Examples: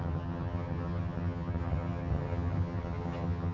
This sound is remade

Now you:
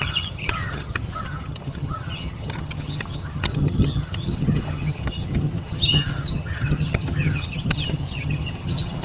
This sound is remade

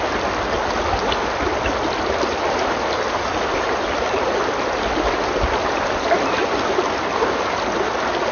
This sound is recorded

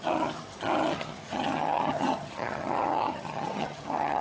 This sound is remade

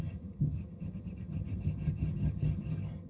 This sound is remade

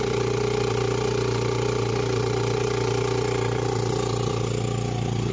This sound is recorded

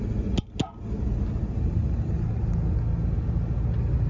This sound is recorded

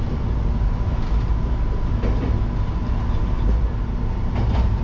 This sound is recorded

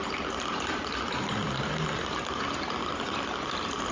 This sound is recorded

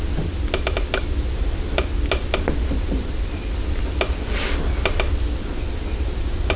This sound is recorded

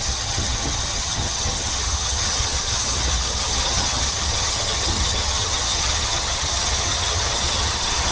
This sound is remade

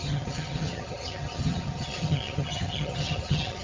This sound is remade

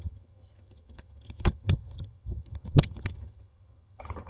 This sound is remade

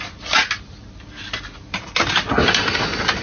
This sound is recorded